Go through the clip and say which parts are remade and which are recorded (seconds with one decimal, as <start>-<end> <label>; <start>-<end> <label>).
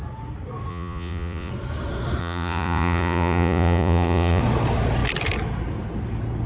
0.0-0.7 recorded; 0.7-1.5 remade; 1.5-2.2 recorded; 2.2-4.4 remade; 4.4-6.5 recorded